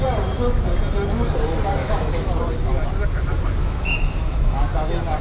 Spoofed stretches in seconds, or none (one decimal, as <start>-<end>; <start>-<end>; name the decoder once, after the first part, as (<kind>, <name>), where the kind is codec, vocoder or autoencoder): 1.8-2.3 (autoencoder, DAC-VAE); 3.6-4.6